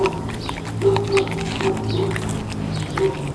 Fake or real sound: real